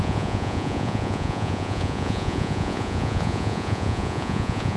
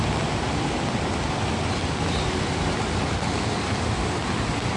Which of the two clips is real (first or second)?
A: second